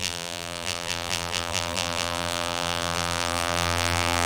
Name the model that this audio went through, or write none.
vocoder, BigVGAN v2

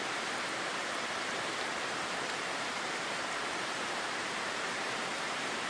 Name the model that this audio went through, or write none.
vocoder, BigVGAN v2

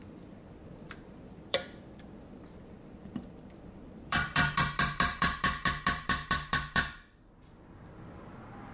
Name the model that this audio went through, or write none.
vocoder, BigVGAN v2